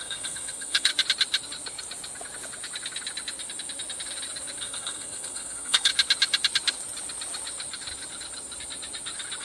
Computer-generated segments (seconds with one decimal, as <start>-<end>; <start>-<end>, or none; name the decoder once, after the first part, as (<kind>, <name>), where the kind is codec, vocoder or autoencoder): 0.0-0.9 (codec, SNAC); 4.6-5.9